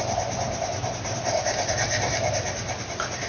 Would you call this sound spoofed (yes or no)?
yes